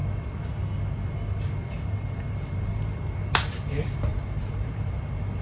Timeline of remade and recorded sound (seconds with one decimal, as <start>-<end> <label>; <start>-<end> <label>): 0.0-1.6 recorded; 1.6-3.0 remade; 3.0-4.1 recorded; 4.1-4.9 remade; 4.9-5.4 recorded